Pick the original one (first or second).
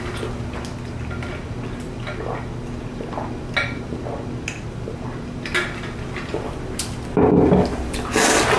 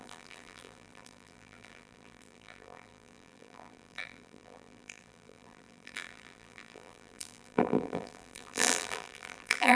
first